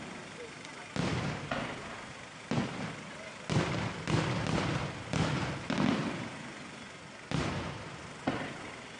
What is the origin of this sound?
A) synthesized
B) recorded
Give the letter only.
B